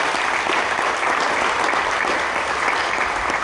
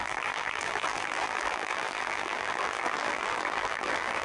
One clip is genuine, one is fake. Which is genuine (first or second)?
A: first